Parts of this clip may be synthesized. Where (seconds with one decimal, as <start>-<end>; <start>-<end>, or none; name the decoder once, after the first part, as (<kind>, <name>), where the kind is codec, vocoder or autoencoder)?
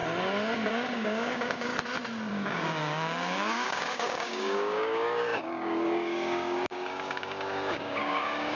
0.7-1.7 (codec, DAC); 2.3-8.6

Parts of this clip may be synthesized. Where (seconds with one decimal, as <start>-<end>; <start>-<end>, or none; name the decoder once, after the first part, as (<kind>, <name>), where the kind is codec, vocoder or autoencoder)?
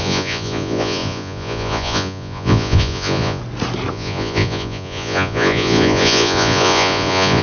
0.0-3.4 (vocoder, Vocos); 3.9-7.4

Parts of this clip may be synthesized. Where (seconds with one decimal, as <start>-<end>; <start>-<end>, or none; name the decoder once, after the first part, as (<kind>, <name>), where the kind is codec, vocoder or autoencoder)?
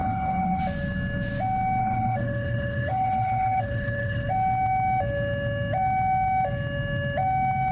0.0-0.6 (codec, HILCodec); 1.8-4.3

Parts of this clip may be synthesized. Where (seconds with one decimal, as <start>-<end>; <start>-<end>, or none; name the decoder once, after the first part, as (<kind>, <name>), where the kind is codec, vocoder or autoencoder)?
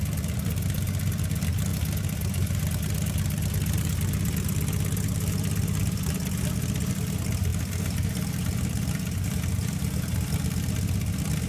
none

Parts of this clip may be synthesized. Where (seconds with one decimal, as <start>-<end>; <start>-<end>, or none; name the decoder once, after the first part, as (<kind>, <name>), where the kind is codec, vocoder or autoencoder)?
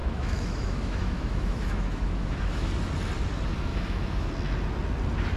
0.0-2.7 (autoencoder, DAC-VAE); 3.7-4.3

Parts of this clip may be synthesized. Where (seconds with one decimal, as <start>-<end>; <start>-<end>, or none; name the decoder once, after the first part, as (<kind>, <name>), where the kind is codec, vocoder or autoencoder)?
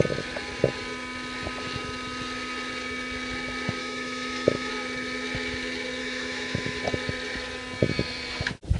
3.8-4.7 (autoencoder, DAC-VAE); 6.0-6.8